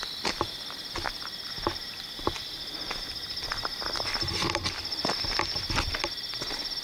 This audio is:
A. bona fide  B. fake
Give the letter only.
A